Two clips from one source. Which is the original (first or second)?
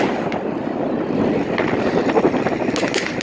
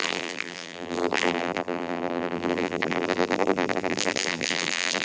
first